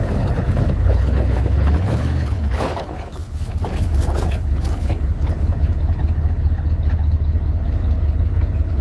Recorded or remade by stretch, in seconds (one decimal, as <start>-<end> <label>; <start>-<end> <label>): 0.0-8.8 remade